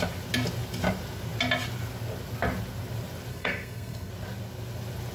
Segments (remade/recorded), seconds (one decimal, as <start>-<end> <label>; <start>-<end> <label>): 0.0-3.3 recorded; 3.3-4.1 remade; 4.1-5.1 recorded